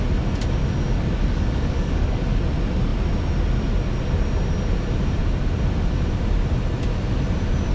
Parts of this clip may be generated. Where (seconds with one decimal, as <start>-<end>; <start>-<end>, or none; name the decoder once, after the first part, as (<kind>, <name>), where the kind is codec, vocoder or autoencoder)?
1.2-2.4 (codec, DAC)